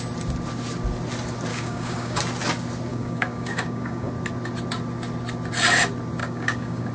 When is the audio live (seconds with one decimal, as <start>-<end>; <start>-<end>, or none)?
0.0-1.5; 2.2-2.9; 4.1-6.2